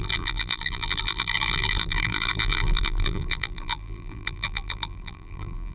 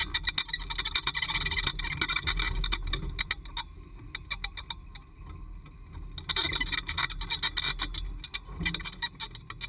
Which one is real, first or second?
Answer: second